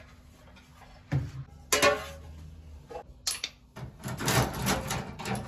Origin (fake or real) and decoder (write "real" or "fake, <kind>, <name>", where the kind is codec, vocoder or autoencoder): real